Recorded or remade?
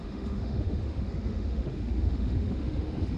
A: remade